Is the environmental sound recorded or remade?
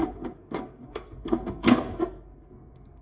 remade